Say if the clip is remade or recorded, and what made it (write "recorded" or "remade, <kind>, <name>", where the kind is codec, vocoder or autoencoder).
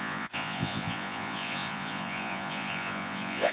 remade, vocoder, Vocos